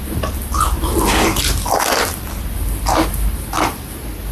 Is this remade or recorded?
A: recorded